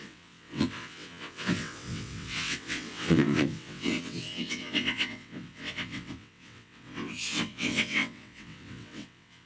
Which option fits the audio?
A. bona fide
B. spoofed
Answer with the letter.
B